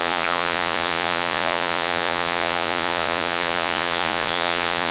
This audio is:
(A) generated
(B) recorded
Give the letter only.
A